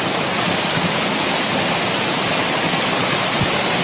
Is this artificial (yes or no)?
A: no